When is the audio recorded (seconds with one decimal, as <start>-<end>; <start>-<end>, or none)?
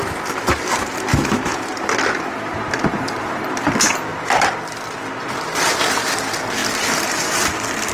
0.0-1.1; 1.7-7.9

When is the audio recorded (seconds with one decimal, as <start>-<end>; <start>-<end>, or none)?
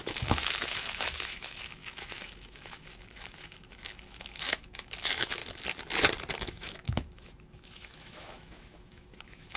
5.4-6.4